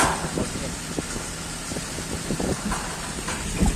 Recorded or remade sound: recorded